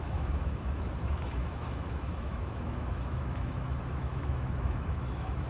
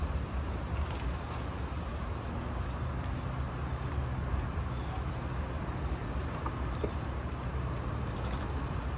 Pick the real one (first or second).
second